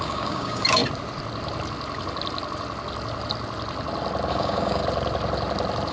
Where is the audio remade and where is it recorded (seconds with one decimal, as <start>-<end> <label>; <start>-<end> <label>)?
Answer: 0.0-0.8 remade; 0.8-4.3 recorded; 4.3-4.8 remade; 4.8-5.9 recorded